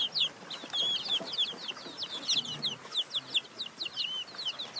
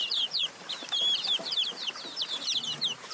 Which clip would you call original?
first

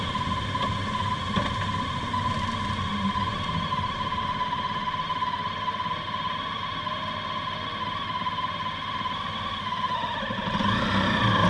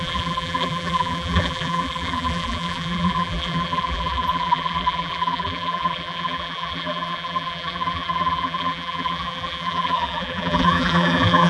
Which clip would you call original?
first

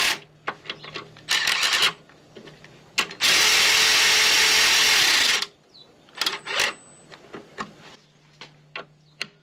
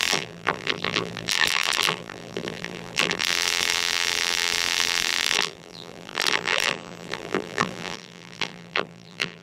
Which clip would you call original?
first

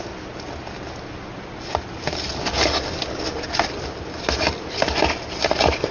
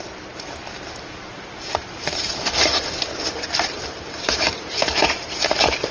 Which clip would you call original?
first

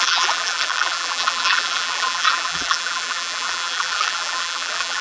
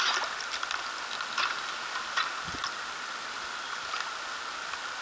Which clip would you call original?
second